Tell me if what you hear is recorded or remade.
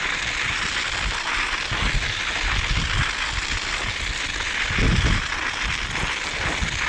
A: recorded